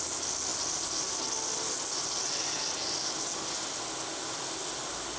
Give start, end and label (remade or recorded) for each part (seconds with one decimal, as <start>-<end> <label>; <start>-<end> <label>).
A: 0.0-5.2 recorded